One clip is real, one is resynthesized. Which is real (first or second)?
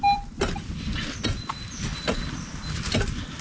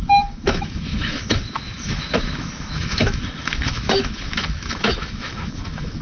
first